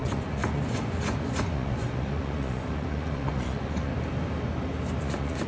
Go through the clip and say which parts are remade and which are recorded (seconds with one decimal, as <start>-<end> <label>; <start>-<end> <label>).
0.0-3.9 remade; 3.9-5.0 recorded; 5.0-5.5 remade